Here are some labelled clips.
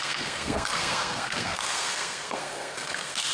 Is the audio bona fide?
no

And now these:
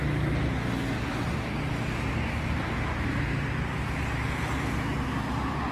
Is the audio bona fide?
yes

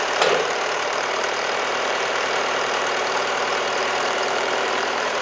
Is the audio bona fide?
no